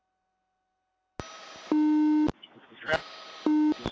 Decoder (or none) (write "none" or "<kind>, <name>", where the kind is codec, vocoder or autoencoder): none